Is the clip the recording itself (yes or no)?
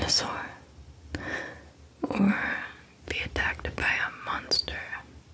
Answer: yes